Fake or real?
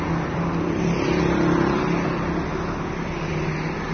real